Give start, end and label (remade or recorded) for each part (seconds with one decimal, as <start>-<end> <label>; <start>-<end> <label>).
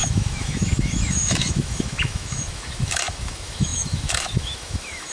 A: 0.0-5.1 remade